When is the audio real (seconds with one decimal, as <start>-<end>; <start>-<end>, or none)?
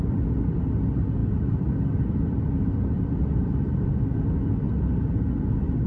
0.0-5.9